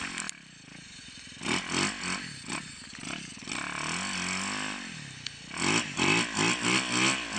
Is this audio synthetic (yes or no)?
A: no